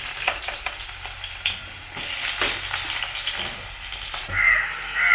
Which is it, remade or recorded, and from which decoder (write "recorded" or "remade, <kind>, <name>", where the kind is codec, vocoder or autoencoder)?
recorded